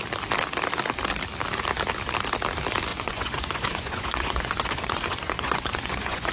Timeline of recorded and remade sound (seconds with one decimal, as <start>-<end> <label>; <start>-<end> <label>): 0.0-2.9 recorded; 2.9-6.3 remade